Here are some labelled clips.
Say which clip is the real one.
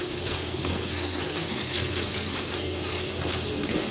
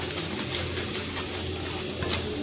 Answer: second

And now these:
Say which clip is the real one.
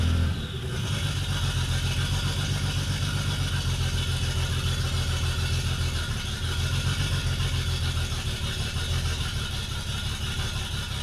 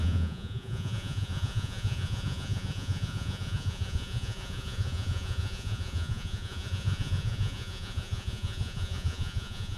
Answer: first